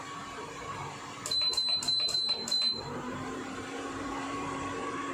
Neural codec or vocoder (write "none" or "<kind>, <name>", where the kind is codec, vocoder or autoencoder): vocoder, BigVGAN v2